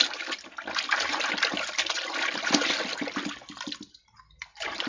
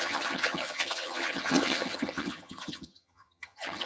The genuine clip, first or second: first